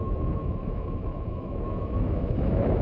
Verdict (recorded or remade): remade